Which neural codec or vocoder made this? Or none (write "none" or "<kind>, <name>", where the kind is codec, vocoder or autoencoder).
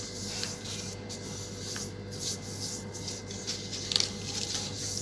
none